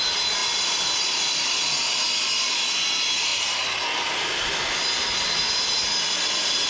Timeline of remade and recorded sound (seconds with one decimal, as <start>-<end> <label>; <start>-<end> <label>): 0.0-6.7 recorded